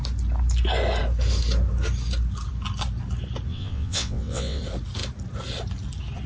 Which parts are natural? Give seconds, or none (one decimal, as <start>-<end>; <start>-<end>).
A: 0.0-3.5; 4.6-6.3